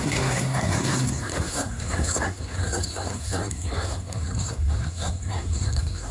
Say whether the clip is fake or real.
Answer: fake